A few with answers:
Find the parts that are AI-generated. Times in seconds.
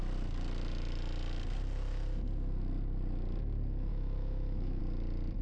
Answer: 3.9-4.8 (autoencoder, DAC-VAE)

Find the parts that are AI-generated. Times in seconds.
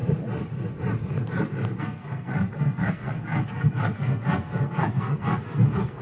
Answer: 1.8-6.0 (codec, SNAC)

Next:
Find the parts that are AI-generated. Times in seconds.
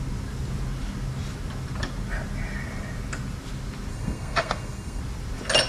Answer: 3.9-5.0 (codec, SNAC)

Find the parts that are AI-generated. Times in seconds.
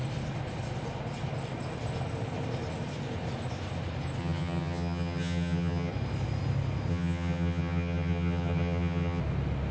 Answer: 4.2-5.9 (vocoder, HiFi-GAN); 6.9-9.2